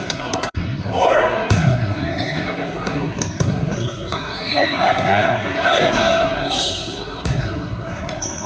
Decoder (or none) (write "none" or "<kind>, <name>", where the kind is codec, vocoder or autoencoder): codec, SNAC